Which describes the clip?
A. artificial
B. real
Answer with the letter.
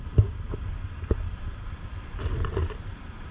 B